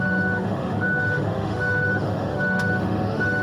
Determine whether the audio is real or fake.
fake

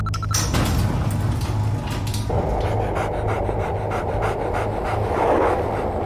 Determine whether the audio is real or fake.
real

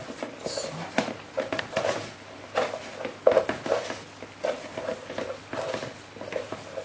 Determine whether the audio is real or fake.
real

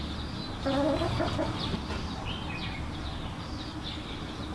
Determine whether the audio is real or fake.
real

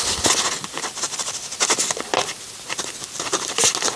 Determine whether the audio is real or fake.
real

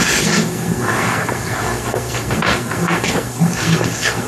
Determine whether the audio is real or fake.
fake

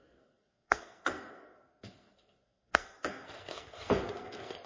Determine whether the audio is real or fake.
fake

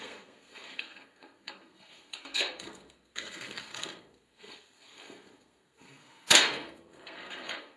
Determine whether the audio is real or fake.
fake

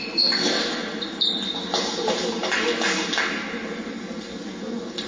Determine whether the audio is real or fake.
real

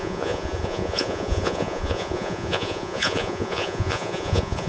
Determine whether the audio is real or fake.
fake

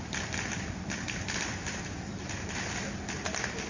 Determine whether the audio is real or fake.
real